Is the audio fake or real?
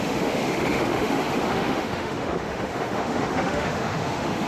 fake